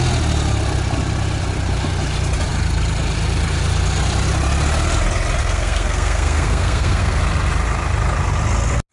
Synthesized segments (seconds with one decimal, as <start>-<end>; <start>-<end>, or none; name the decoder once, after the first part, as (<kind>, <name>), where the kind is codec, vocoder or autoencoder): 5.4-7.2 (codec, SNAC)